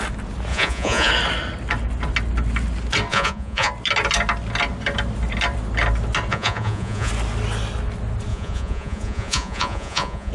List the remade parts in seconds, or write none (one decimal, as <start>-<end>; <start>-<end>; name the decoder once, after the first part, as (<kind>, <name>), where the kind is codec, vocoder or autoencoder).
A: 0.5-1.1 (vocoder, Vocos); 3.1-3.7; 6.3-7.1; 8.3-10.3